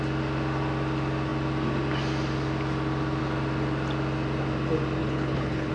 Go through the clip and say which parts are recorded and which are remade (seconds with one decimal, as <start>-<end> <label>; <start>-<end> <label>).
0.0-5.0 recorded; 5.0-5.7 remade